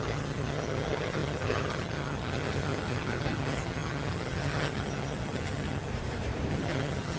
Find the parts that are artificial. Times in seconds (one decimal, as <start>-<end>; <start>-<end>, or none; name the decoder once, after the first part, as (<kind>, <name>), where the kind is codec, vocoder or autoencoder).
0.0-5.9 (vocoder, HiFi-GAN); 6.5-7.2